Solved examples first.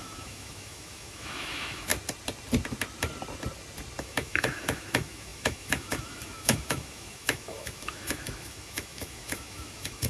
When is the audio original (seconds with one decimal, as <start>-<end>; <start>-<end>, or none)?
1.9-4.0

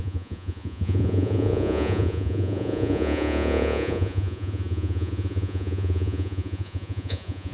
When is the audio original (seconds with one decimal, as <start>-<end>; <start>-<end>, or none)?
none

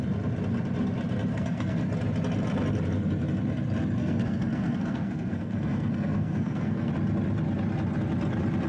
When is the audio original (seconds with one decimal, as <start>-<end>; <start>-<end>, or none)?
0.0-1.3; 1.8-4.0; 6.9-8.7